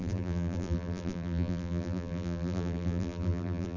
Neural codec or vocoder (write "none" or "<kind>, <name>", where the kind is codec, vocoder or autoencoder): vocoder, BigVGAN v2